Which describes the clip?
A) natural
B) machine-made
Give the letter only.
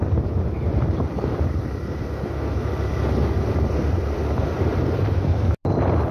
B